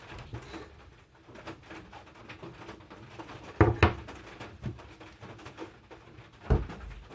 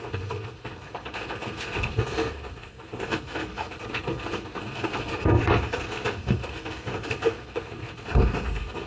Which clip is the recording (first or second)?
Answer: first